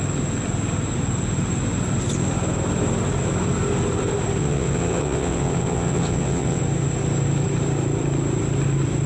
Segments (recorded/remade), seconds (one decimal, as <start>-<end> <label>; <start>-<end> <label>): 0.0-4.4 recorded; 4.4-6.6 remade; 6.6-9.1 recorded

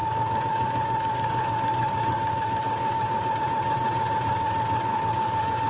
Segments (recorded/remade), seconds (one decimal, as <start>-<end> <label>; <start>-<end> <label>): 0.0-3.4 remade; 3.4-4.9 recorded; 4.9-5.7 remade

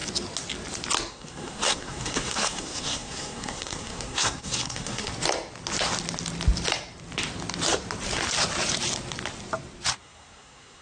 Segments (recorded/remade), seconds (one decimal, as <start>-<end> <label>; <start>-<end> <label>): 0.0-1.1 recorded; 1.1-5.1 remade; 5.1-10.0 recorded; 10.0-10.8 remade